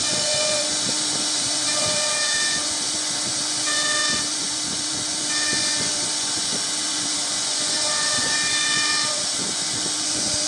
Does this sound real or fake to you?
fake